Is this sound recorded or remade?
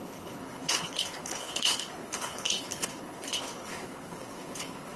remade